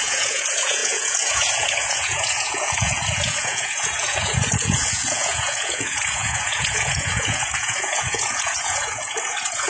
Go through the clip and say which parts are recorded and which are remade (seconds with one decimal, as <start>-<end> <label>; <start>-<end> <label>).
0.0-9.7 remade

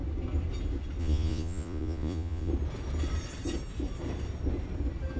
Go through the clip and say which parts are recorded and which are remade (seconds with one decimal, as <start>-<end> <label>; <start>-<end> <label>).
0.0-1.0 recorded; 1.0-2.5 remade; 2.5-5.2 recorded

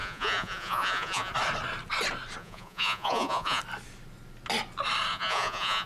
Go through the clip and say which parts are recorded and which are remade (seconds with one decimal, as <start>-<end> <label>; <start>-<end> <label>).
0.0-1.3 remade; 1.3-2.4 recorded; 2.4-3.6 remade; 3.6-5.1 recorded; 5.1-5.9 remade

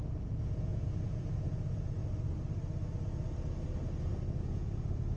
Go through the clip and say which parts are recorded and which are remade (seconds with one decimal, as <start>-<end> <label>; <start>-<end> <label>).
0.0-2.0 remade; 2.0-4.4 recorded; 4.4-5.2 remade

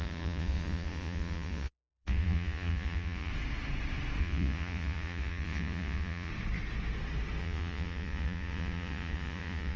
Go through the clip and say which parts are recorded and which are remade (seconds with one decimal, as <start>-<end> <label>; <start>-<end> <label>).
0.0-3.3 remade; 3.3-4.2 recorded; 4.2-6.3 remade; 6.3-7.4 recorded; 7.4-9.8 remade